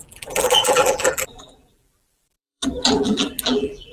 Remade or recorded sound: remade